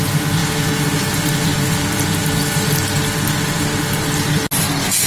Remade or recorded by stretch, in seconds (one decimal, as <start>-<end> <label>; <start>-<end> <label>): 0.0-5.1 recorded